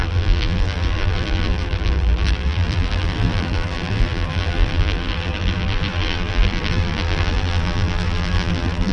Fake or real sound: fake